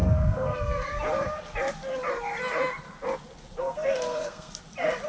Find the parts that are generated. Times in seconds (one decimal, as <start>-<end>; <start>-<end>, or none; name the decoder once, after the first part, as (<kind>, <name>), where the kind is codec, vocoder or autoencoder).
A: 0.0-1.0 (codec, SNAC); 3.6-4.5